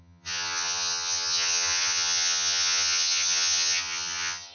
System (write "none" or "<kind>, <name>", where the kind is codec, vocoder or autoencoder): vocoder, HiFi-GAN